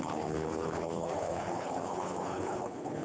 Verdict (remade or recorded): remade